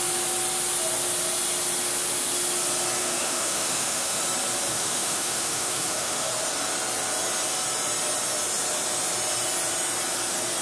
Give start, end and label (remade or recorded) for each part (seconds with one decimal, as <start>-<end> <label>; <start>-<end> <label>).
0.0-3.0 recorded; 3.0-4.2 remade; 4.2-4.7 recorded; 4.7-6.3 remade; 6.3-10.6 recorded